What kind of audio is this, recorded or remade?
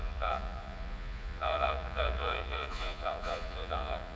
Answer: remade